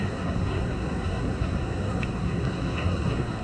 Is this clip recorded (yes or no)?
no